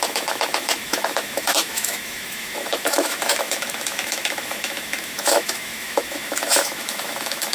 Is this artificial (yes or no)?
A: yes